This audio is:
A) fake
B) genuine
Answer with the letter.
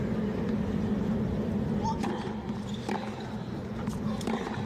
B